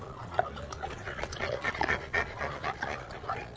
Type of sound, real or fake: fake